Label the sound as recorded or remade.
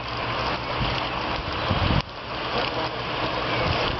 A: recorded